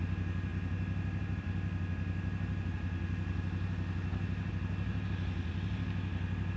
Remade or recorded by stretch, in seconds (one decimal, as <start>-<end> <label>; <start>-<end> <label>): 0.0-6.6 recorded